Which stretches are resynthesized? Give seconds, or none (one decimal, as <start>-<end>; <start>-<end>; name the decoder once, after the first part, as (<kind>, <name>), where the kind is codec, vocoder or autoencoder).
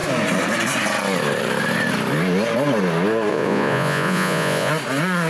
3.3-4.7 (vocoder, Vocos)